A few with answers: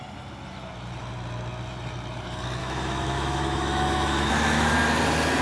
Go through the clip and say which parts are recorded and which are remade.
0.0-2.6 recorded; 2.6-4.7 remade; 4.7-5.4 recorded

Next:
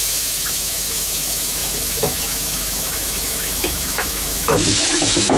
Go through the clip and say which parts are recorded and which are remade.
0.0-5.4 remade

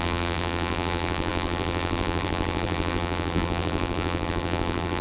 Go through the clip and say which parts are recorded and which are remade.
0.0-5.0 remade

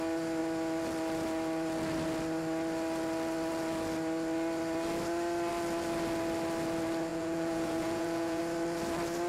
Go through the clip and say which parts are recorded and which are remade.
0.0-7.1 recorded; 7.1-8.4 remade; 8.4-9.3 recorded